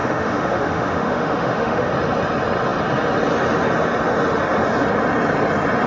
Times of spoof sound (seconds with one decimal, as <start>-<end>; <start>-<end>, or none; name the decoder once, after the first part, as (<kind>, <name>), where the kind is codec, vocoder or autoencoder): 0.0-1.9 (autoencoder, DAC-VAE)